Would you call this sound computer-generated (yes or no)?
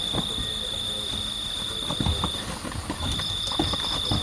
no